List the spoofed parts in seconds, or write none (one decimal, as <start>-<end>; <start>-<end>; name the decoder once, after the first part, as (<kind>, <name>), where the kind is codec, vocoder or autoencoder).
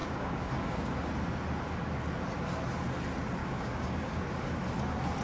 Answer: 0.0-1.1 (codec, DAC); 3.4-4.2